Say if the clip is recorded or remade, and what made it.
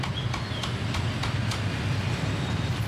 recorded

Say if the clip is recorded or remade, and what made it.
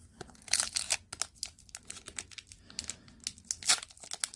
recorded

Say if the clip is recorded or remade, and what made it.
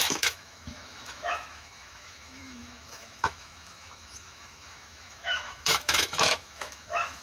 remade, autoencoder, DAC-VAE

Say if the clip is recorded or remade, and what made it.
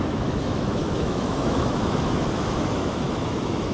remade, autoencoder, DAC-VAE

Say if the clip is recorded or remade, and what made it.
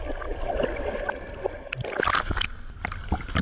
recorded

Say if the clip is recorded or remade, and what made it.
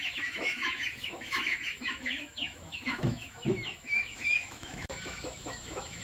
remade, autoencoder, DAC-VAE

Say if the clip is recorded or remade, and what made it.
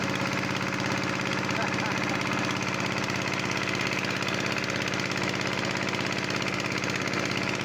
recorded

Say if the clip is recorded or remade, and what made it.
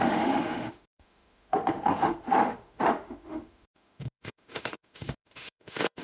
remade, autoencoder, DAC-VAE